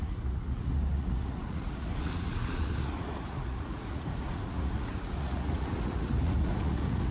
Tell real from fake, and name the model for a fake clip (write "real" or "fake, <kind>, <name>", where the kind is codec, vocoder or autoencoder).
fake, vocoder, Vocos